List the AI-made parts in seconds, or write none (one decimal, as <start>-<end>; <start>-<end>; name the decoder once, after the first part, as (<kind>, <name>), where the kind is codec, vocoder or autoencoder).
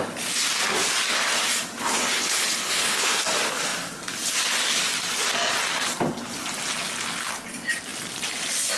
1.8-3.2 (codec, HILCodec)